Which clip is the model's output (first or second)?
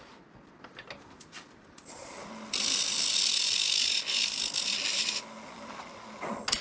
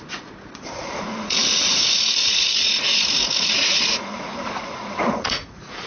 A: second